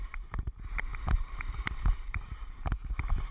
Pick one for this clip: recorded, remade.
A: recorded